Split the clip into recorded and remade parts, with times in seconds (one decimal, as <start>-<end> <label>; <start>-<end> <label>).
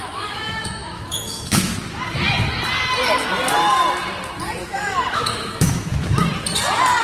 0.0-1.7 remade; 1.7-4.6 recorded; 4.6-6.2 remade; 6.2-7.0 recorded